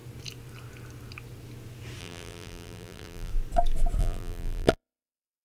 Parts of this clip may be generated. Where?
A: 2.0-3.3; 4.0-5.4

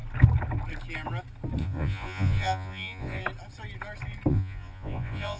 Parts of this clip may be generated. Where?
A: 1.6-3.2; 4.3-5.4

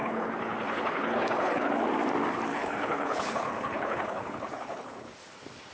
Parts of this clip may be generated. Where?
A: 0.0-1.7; 2.5-5.1

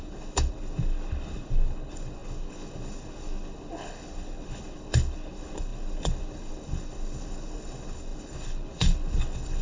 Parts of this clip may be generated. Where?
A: 0.0-9.6

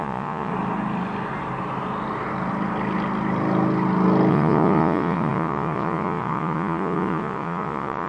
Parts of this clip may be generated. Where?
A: 0.0-0.5; 4.3-8.1

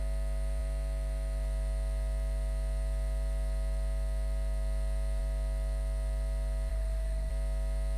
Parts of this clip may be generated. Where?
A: 6.7-7.3

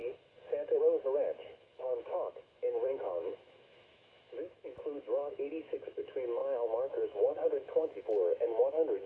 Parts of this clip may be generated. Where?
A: 0.8-9.1